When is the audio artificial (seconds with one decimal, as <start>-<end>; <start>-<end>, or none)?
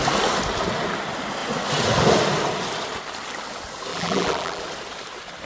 3.9-4.6